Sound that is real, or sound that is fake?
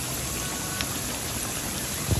real